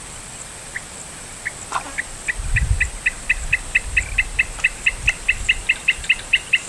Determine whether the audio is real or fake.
real